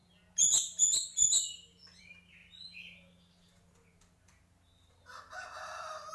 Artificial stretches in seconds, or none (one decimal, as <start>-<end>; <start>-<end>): none